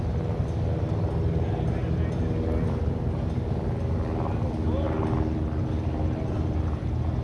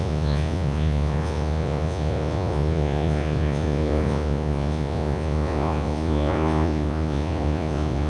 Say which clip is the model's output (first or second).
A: second